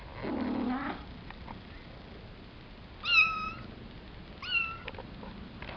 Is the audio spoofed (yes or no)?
no